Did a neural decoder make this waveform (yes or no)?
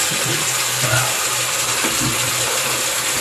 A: no